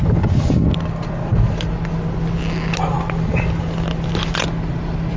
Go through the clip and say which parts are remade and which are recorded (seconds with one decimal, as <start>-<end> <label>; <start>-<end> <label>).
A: 0.0-5.2 recorded